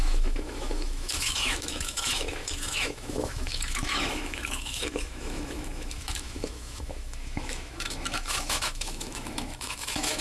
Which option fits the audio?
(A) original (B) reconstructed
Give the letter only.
B